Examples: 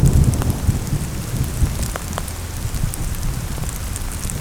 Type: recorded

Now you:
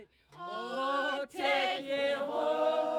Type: remade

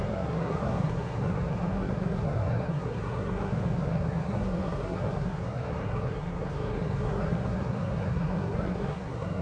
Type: remade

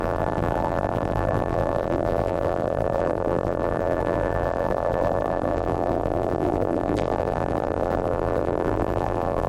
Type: remade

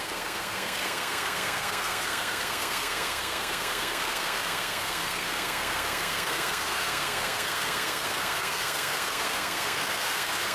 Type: remade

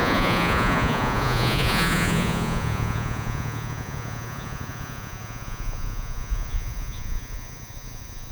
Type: remade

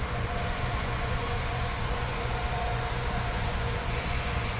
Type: remade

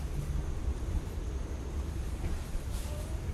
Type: remade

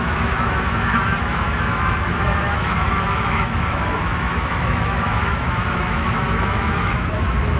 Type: remade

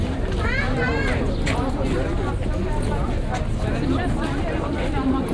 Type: recorded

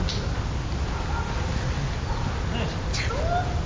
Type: recorded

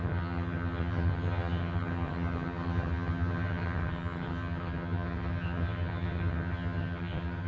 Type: remade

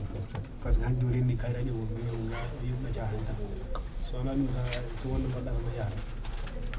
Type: recorded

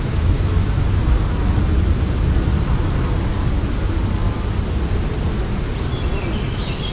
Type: recorded